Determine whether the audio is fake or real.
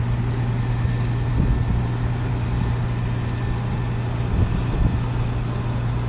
real